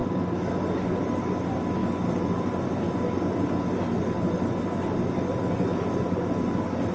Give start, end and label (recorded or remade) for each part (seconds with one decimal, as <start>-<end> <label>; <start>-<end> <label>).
0.0-6.9 recorded